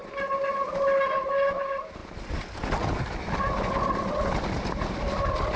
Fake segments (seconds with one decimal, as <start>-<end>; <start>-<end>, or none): none